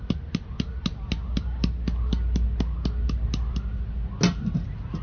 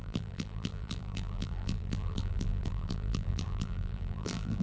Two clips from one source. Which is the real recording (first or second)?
first